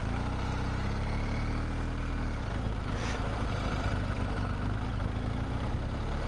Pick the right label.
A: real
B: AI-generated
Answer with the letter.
A